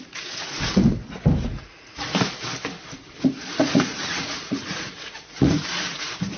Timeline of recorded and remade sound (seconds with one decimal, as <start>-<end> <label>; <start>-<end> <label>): 0.0-0.7 remade; 0.7-1.4 recorded; 1.4-2.1 remade; 2.1-3.2 recorded; 3.2-6.4 remade